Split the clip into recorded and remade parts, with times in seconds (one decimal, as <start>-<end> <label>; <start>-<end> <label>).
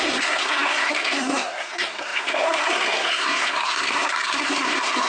0.0-5.1 remade